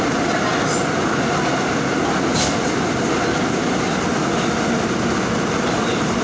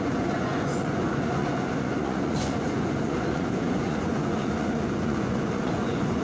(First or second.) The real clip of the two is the first